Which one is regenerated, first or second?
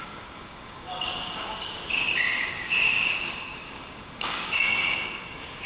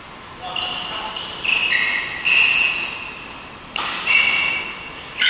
first